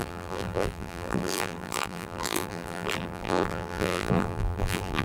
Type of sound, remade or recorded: remade